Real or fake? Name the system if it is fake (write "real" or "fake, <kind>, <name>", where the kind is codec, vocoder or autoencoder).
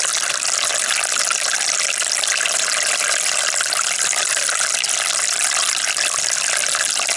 real